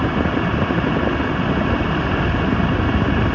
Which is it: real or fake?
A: real